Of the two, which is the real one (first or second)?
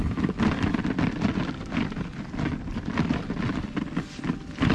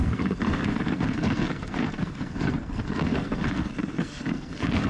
first